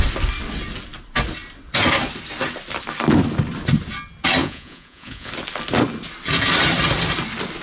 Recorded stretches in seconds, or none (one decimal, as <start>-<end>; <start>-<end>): 0.0-4.4; 5.3-7.6